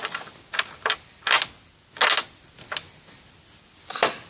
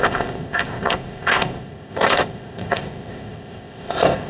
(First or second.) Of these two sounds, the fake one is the second